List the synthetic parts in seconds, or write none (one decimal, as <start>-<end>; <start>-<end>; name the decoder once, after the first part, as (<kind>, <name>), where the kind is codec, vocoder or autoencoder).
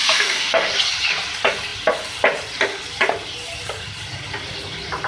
0.0-0.7 (autoencoder, DAC-VAE)